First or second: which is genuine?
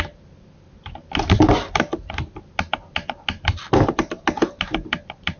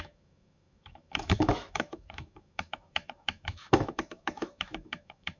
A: first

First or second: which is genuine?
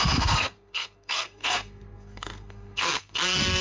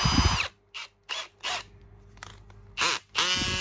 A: second